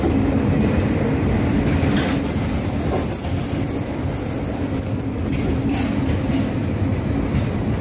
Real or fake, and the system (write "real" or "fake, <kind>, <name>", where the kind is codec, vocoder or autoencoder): real